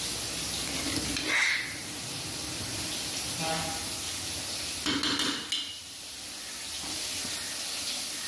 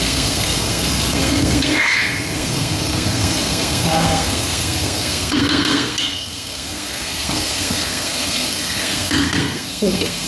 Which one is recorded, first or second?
first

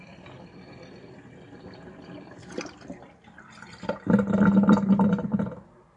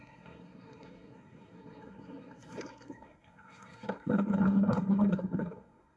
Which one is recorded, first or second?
first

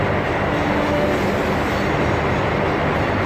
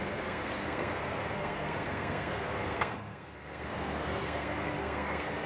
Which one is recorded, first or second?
first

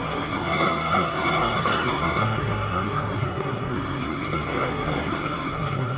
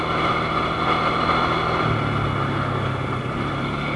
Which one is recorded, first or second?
second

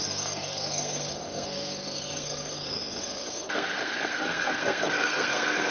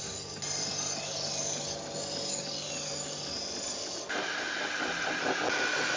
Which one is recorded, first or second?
second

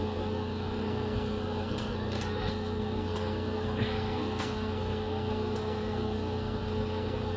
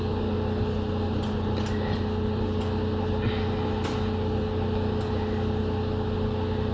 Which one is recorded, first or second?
second